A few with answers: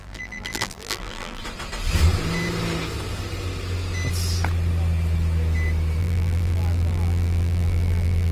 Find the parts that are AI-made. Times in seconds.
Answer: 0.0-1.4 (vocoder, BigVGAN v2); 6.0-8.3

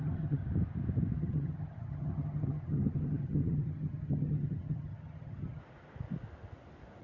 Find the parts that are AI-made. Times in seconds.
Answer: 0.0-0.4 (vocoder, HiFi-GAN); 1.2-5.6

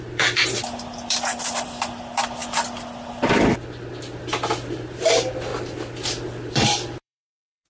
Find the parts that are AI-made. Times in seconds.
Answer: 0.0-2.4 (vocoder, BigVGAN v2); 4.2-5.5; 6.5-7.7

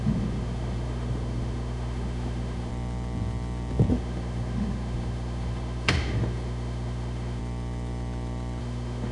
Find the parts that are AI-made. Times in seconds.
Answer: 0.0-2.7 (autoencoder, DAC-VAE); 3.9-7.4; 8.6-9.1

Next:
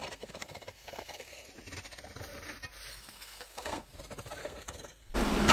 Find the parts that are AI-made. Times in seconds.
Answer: 0.0-1.5 (codec, SNAC); 2.9-3.9; 4.4-5.1

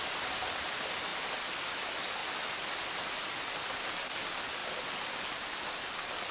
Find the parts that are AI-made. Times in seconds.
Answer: none